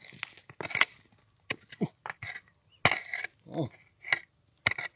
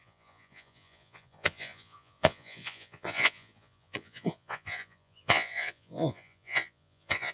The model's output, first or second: second